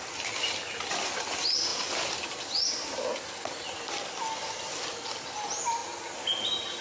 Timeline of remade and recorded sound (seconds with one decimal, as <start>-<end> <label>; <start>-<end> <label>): 0.0-6.8 recorded